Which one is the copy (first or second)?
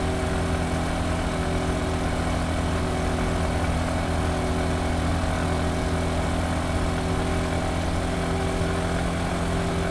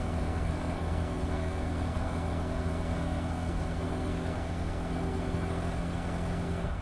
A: second